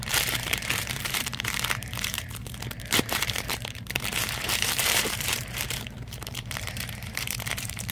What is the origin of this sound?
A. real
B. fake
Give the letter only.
B